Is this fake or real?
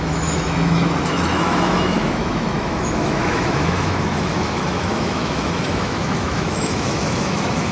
fake